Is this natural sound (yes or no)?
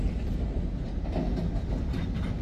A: yes